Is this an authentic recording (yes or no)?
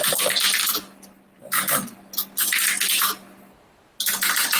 yes